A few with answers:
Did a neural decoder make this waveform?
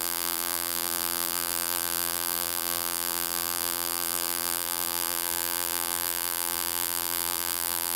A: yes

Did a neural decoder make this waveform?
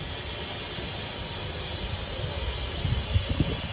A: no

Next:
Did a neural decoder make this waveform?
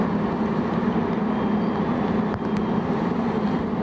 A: no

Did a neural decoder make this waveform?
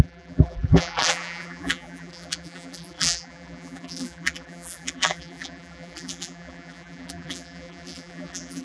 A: yes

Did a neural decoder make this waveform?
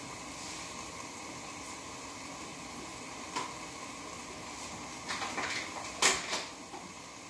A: no